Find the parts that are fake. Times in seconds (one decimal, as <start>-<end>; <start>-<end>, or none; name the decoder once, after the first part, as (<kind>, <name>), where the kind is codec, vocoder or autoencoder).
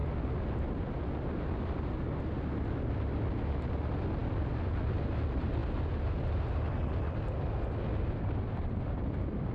none